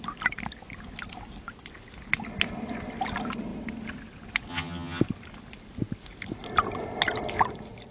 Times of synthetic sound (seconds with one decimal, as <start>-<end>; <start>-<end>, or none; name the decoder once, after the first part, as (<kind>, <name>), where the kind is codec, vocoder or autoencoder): 4.5-5.0 (vocoder, HiFi-GAN)

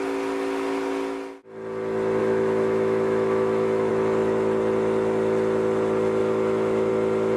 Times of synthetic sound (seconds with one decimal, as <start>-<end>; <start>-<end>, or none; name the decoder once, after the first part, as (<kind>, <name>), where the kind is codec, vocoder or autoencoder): 2.2-3.9 (autoencoder, DAC-VAE); 6.2-6.9

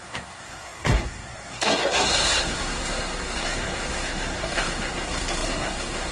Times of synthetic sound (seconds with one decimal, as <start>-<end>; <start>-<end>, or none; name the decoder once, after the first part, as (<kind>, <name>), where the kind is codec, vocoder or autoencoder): 0.0-6.1 (codec, SNAC)

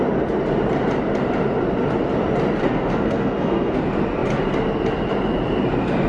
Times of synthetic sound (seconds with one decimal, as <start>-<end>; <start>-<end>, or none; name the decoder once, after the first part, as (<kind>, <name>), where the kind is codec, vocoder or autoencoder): 2.6-3.8 (codec, SNAC)

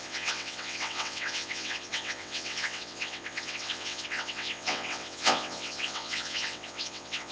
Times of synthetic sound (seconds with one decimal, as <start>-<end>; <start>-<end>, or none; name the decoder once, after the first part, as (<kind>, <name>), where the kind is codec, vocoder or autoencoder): 0.0-7.3 (vocoder, WaveNeXt)

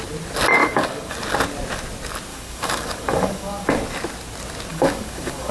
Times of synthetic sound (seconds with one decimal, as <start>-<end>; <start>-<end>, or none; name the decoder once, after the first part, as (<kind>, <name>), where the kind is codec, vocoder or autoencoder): 0.6-1.2 (codec, DAC); 2.3-3.7; 4.7-5.5